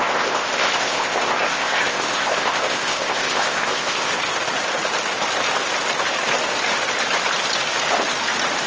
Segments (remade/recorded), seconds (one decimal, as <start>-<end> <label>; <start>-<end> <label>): 0.0-4.1 remade; 4.1-8.7 recorded